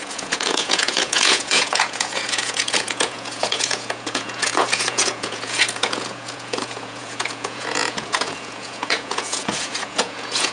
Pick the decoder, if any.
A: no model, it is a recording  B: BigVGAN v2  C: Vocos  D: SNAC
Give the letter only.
C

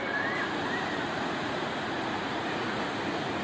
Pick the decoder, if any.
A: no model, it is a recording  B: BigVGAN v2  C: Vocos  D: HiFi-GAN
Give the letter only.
C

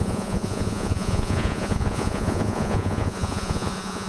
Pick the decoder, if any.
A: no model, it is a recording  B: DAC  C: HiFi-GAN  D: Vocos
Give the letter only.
D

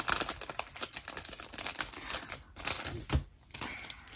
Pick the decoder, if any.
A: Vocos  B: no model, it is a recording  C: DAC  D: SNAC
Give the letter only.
B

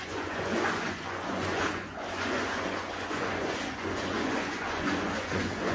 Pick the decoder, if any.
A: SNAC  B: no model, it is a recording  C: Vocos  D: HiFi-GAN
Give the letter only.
C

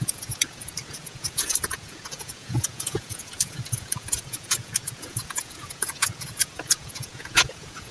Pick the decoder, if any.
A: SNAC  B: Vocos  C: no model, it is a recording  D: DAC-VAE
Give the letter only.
B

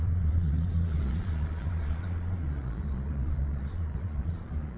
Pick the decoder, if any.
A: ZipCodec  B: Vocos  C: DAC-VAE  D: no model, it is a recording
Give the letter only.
B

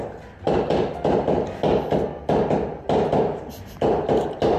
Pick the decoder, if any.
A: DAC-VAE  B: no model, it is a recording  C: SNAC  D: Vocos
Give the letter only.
B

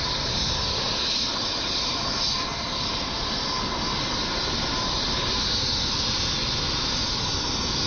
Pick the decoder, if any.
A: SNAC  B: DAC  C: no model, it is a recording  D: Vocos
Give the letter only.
C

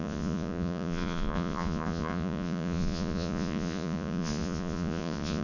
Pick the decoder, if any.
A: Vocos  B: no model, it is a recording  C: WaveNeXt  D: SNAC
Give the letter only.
A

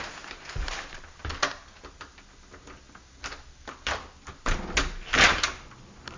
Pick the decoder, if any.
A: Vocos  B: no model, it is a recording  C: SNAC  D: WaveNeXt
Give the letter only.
B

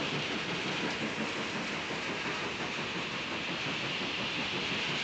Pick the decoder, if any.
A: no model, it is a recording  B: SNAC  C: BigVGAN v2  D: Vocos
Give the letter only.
A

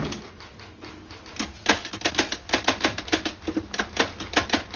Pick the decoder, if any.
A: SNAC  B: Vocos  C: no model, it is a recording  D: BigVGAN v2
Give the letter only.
C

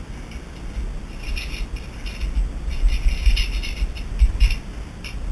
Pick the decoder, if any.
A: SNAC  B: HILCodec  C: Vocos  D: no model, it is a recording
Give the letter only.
D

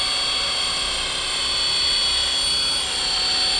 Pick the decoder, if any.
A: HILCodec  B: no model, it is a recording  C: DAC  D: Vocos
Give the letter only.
B